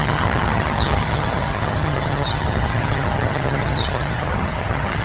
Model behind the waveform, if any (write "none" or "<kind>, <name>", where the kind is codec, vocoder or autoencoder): vocoder, HiFi-GAN